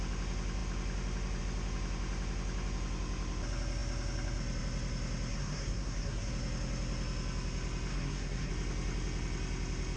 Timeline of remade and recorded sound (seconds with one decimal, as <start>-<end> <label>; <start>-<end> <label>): 0.0-5.3 recorded; 5.3-6.3 remade; 6.3-7.9 recorded; 7.9-8.5 remade; 8.5-10.0 recorded